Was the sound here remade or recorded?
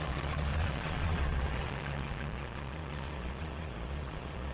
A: remade